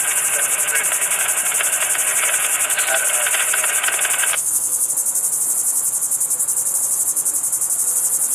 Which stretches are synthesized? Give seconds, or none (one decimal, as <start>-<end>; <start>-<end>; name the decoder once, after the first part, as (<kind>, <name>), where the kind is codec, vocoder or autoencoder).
4.3-4.9 (codec, SNAC)